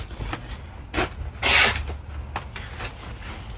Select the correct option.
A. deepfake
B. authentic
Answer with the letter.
B